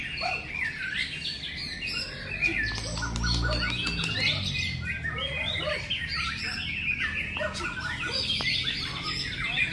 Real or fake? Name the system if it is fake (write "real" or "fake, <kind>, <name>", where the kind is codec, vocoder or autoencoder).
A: real